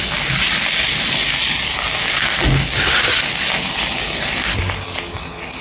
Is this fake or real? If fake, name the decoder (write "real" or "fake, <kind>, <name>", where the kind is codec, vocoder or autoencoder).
real